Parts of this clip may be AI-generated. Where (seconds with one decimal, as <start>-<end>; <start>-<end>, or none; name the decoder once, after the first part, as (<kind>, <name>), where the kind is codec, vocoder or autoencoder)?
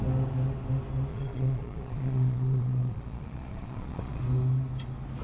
1.1-4.2 (vocoder, Vocos)